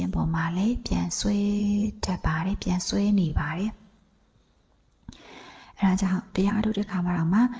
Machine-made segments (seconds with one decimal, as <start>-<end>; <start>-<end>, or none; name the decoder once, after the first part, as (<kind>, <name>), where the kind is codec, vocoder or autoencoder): 1.6-2.2 (vocoder, HiFi-GAN)